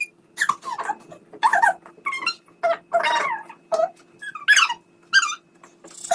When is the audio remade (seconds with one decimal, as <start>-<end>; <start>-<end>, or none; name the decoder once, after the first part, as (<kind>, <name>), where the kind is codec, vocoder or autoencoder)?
none